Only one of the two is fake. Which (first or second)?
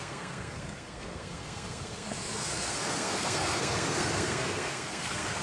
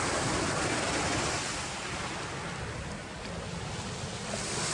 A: first